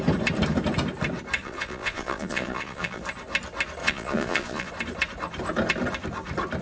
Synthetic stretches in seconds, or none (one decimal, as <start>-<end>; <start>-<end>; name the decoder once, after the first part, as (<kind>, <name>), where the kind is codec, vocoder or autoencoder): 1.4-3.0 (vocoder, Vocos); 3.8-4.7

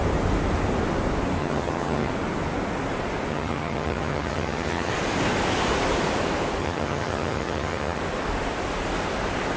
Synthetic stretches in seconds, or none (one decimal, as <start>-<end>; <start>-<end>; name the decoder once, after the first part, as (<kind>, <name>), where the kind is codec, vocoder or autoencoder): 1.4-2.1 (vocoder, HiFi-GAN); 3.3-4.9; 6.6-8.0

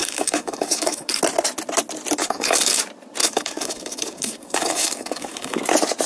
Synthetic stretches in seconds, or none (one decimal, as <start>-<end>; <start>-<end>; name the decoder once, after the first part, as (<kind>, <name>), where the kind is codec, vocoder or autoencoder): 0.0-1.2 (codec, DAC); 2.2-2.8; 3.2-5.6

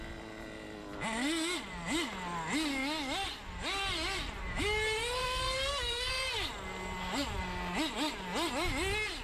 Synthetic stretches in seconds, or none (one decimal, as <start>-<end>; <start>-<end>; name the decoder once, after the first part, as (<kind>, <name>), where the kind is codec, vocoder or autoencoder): 5.2-6.1 (codec, SNAC)

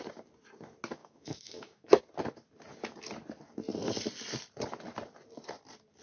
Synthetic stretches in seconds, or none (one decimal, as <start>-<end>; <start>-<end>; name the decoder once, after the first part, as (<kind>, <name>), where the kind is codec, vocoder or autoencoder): 1.0-2.0 (autoencoder, DAC-VAE)

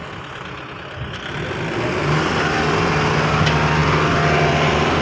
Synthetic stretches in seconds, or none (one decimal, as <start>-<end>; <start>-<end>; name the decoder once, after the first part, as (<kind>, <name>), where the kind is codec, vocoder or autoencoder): none